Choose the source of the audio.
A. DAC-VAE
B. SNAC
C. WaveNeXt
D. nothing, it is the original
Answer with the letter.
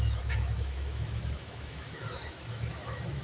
A